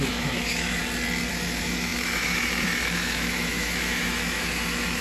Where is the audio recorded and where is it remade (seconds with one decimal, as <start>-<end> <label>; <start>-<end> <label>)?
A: 0.0-0.8 remade; 0.8-1.3 recorded; 1.3-5.0 remade

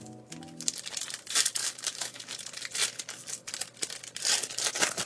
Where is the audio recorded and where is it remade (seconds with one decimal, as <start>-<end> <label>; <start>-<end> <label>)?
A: 0.0-1.6 recorded; 1.6-2.2 remade; 2.2-5.1 recorded

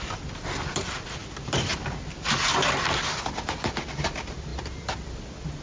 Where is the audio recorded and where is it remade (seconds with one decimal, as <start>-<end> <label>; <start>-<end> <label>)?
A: 0.0-5.6 recorded

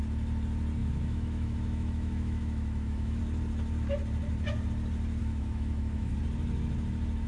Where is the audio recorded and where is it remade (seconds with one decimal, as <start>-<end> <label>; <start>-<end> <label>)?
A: 0.0-0.8 recorded; 0.8-3.2 remade; 3.2-5.2 recorded; 5.2-6.1 remade; 6.1-7.3 recorded

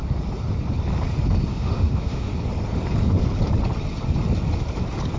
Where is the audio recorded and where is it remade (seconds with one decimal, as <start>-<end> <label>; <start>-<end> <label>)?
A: 0.0-1.5 recorded; 1.5-2.3 remade; 2.3-5.2 recorded

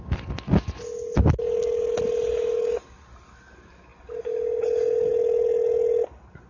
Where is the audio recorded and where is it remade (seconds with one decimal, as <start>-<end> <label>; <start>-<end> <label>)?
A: 0.0-6.5 recorded

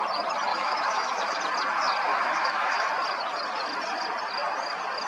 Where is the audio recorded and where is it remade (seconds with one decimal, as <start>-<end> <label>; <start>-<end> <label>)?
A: 0.0-0.5 recorded; 0.5-1.4 remade; 1.4-2.1 recorded; 2.1-2.9 remade; 2.9-5.1 recorded

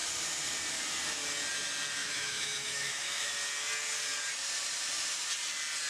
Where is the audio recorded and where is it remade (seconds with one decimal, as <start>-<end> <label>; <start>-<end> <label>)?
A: 0.0-2.0 recorded; 2.0-3.3 remade; 3.3-5.9 recorded